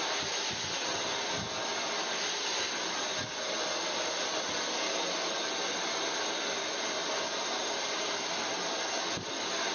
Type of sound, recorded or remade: recorded